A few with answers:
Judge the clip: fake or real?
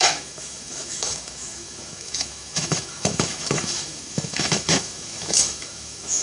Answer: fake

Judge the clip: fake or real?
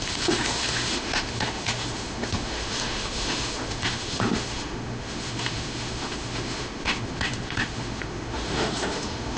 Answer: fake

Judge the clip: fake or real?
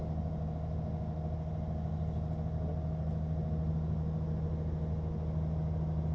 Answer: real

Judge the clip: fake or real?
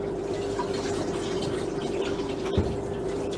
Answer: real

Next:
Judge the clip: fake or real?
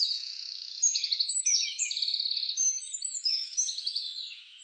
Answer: fake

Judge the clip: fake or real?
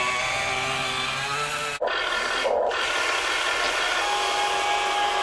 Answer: real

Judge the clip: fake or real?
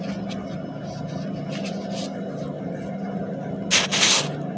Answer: real